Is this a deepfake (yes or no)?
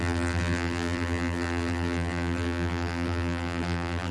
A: yes